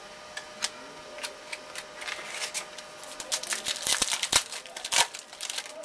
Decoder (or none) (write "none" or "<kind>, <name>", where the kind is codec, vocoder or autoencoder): none